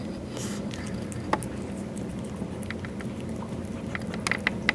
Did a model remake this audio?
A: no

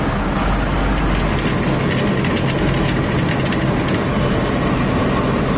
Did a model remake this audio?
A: no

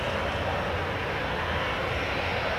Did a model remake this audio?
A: no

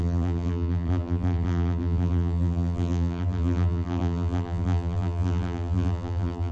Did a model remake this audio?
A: yes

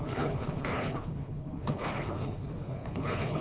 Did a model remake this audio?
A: yes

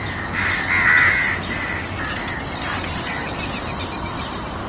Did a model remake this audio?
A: no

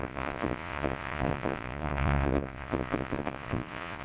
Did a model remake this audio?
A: yes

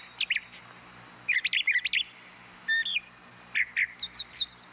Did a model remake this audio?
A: no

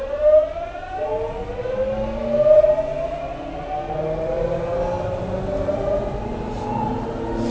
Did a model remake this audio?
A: no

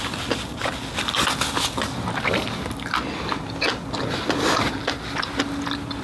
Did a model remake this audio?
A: no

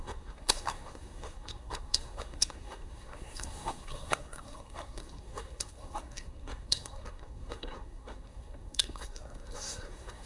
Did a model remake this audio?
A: yes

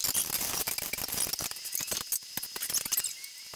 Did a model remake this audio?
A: no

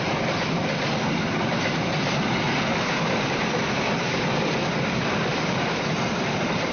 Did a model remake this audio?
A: no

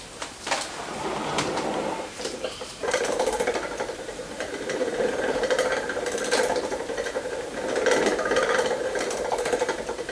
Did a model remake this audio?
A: yes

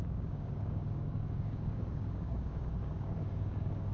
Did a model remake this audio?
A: yes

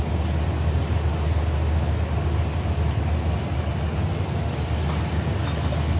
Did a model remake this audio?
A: no